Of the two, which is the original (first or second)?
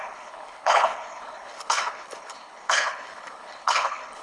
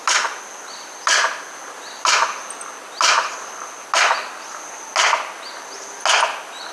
second